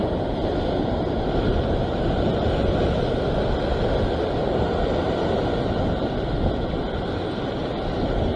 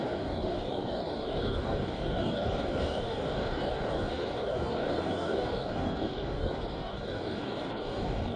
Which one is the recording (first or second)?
first